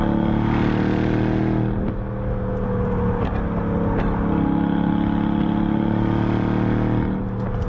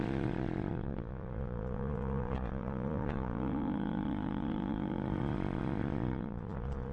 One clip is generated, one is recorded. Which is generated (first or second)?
second